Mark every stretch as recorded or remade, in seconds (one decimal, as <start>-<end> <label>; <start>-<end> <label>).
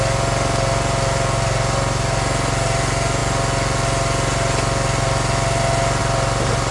0.0-6.7 recorded